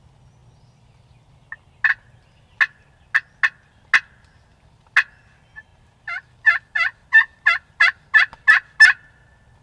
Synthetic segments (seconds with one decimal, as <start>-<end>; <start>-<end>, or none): none